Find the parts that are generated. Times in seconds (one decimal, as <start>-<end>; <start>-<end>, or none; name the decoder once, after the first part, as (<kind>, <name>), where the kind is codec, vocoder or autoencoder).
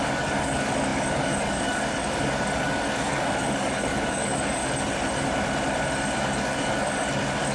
0.0-4.6 (codec, DAC); 6.2-7.5